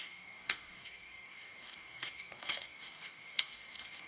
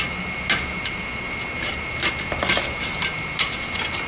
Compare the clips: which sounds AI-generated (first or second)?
first